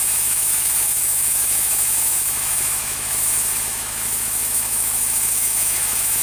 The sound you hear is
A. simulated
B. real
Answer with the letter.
A